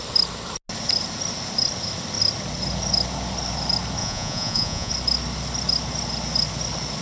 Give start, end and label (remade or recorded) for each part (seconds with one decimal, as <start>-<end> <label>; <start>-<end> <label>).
0.0-4.0 recorded; 4.0-4.9 remade; 4.9-7.0 recorded